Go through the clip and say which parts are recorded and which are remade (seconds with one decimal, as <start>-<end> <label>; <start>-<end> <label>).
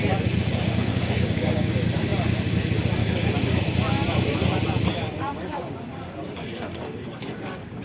0.0-0.9 recorded; 0.9-1.7 remade; 1.7-3.0 recorded; 3.0-3.6 remade; 3.6-5.3 recorded; 5.3-7.8 remade